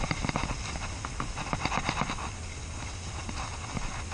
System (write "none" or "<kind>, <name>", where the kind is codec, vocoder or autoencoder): none